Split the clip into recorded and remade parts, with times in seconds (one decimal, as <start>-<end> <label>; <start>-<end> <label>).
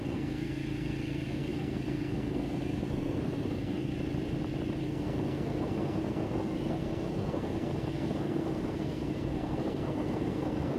0.0-3.9 remade; 3.9-4.8 recorded; 4.8-10.8 remade